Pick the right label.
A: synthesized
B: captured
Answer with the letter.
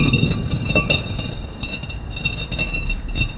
A